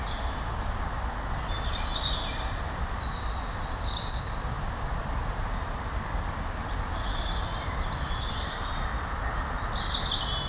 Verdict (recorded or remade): recorded